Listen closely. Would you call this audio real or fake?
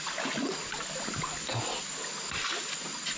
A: real